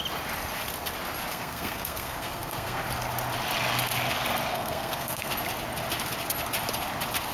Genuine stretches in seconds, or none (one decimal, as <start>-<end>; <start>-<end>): 0.0-1.3; 2.8-4.5; 5.3-7.3